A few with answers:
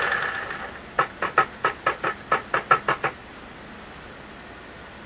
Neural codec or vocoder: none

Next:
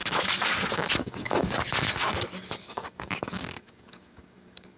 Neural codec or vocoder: codec, DAC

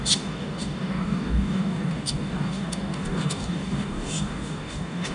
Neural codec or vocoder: codec, DAC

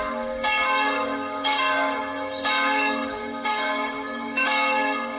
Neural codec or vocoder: codec, DAC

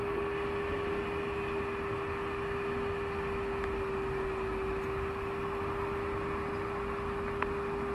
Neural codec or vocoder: none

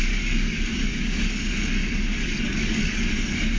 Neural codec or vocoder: codec, DAC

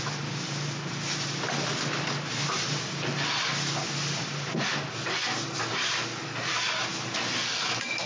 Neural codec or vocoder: none